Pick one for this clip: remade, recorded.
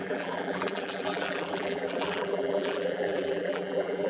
remade